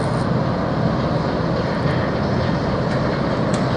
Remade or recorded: recorded